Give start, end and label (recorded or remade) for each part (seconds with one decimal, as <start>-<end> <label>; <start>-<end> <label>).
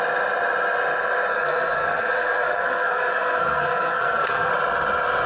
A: 0.0-1.3 recorded; 1.3-4.5 remade; 4.5-5.3 recorded